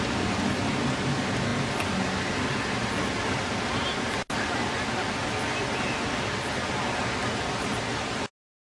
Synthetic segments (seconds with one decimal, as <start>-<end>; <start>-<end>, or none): none